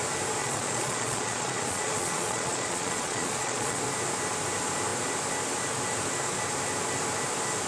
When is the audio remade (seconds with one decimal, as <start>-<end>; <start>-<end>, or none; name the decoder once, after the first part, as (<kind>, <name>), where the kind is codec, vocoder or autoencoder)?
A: 0.4-3.8 (vocoder, Vocos)